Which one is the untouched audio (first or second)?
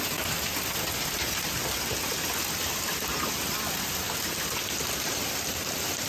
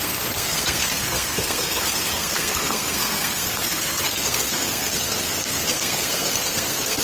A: first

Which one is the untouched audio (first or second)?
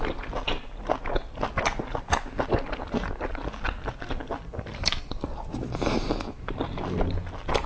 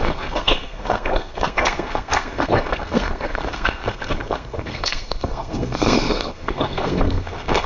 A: first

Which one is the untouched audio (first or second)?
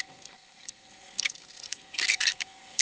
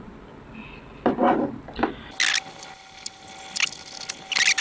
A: second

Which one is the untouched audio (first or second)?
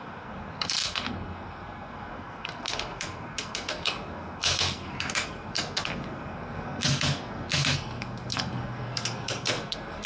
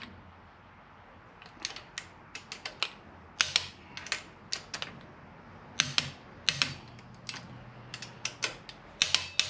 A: second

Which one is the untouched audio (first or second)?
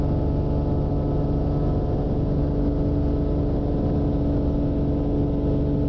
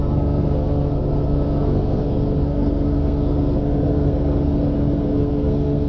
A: first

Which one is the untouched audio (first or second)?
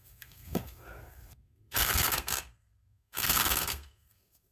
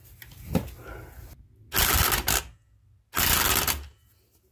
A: second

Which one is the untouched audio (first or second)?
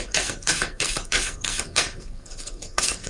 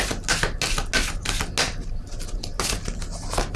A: second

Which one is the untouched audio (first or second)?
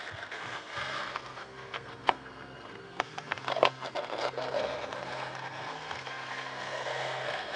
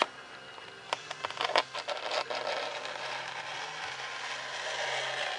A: second